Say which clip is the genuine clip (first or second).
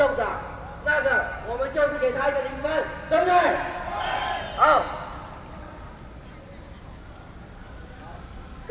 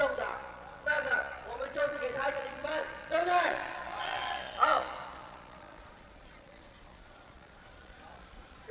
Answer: first